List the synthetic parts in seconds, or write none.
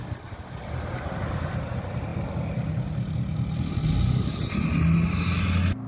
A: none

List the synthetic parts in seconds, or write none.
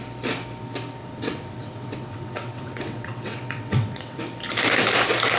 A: 1.0-4.2 (vocoder, WaveNeXt)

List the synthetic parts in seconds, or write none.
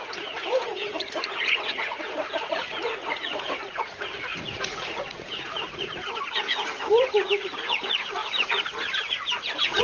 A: 0.0-9.8 (vocoder, Vocos)